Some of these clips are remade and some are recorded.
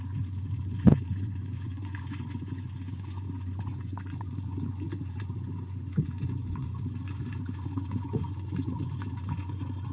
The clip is remade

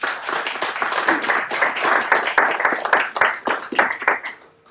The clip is recorded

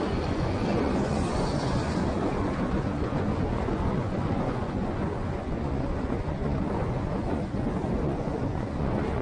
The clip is remade